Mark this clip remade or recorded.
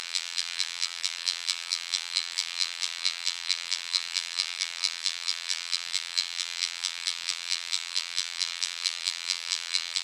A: remade